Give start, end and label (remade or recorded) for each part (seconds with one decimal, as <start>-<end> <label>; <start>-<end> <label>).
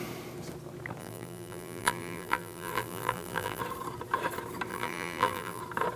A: 0.0-1.0 recorded; 1.0-3.6 remade; 3.6-4.7 recorded; 4.7-5.6 remade; 5.6-6.0 recorded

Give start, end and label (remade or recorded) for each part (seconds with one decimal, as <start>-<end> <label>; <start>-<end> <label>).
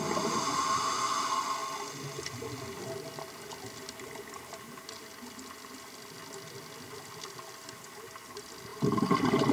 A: 0.0-9.5 recorded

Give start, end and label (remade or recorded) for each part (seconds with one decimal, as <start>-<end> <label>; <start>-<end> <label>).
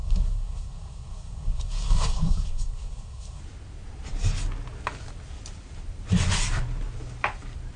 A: 0.0-3.4 remade; 3.4-7.8 recorded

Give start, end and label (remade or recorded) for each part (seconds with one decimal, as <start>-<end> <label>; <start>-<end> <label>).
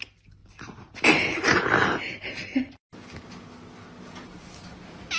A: 0.0-0.4 recorded; 0.4-1.6 remade; 1.6-5.2 recorded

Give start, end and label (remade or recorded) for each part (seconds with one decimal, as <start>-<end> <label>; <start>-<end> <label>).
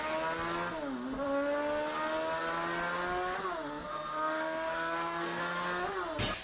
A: 0.0-3.9 recorded; 3.9-5.4 remade; 5.4-6.4 recorded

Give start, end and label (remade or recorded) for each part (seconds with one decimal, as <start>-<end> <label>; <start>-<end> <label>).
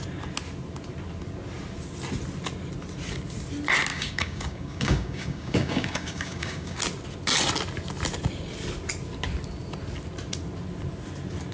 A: 0.0-3.9 recorded; 3.9-6.8 remade; 6.8-11.5 recorded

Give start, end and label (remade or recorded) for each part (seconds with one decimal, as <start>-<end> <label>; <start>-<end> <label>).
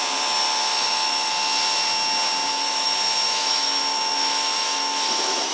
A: 0.0-0.7 recorded; 0.7-1.3 remade; 1.3-2.5 recorded; 2.5-5.5 remade